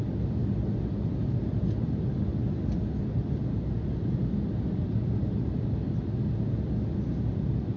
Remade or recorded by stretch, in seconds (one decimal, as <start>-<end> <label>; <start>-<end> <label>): 0.0-7.8 recorded